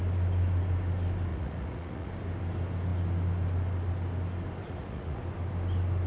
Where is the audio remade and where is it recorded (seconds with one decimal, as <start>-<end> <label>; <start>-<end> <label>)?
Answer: 0.0-1.3 recorded; 1.3-2.1 remade; 2.1-4.6 recorded; 4.6-5.2 remade; 5.2-6.1 recorded